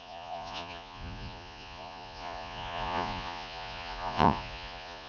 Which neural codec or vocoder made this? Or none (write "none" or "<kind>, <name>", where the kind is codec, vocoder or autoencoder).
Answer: vocoder, Vocos